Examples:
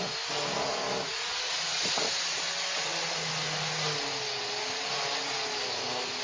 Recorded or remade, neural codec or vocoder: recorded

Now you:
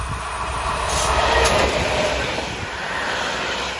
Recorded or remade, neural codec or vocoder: recorded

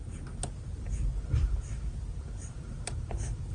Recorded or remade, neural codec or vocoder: recorded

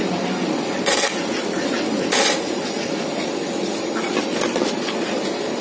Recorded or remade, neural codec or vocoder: recorded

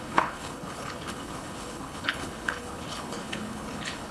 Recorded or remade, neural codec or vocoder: remade, codec, HILCodec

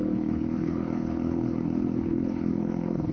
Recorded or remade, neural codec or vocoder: remade, codec, HILCodec